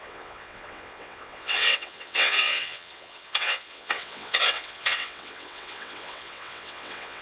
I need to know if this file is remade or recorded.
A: remade